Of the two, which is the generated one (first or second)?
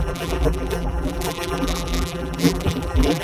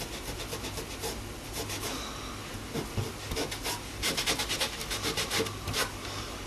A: first